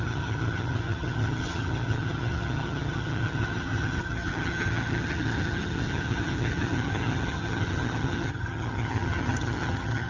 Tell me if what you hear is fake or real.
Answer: fake